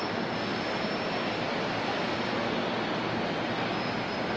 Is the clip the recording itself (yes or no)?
yes